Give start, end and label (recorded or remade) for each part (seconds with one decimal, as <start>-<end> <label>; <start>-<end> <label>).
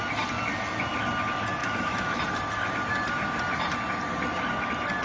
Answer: 0.0-1.6 recorded; 1.6-2.2 remade; 2.2-5.0 recorded